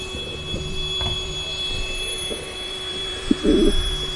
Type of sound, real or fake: fake